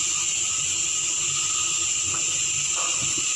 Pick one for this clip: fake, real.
real